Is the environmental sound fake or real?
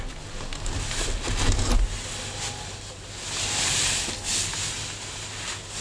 real